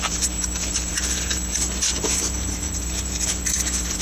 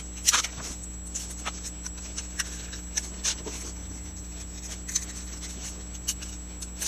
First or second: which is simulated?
first